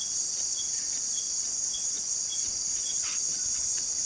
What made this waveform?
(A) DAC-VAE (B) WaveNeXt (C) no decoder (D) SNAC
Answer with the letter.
B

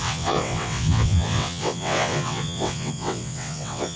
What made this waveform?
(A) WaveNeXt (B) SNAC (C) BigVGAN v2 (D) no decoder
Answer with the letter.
A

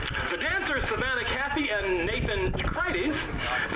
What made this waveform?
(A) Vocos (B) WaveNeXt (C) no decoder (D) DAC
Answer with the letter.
C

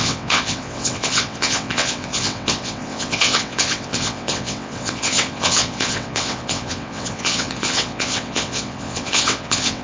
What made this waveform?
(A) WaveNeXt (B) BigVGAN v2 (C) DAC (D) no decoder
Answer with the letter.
A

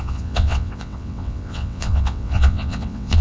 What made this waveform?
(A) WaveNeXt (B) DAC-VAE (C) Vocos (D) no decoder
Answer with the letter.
A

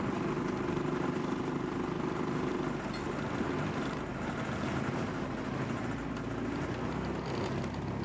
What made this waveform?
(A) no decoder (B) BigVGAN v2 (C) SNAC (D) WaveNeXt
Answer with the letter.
A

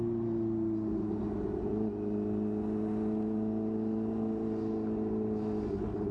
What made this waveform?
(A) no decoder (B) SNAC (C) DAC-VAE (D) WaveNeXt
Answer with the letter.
A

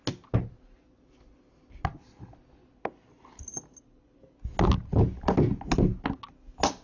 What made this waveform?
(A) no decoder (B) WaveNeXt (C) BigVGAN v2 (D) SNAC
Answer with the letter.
A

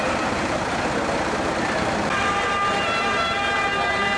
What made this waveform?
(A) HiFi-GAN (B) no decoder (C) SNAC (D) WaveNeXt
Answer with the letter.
B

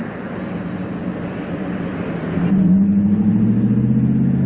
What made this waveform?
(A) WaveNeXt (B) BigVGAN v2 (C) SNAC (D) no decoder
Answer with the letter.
D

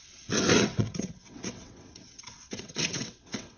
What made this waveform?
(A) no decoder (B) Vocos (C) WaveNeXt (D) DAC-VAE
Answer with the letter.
C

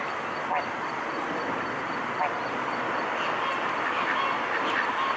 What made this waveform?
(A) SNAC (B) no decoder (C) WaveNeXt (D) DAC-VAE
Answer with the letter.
B